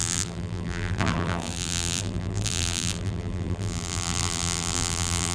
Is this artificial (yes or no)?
yes